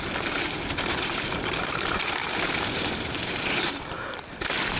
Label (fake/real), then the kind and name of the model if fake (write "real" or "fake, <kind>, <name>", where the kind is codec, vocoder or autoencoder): fake, vocoder, BigVGAN v2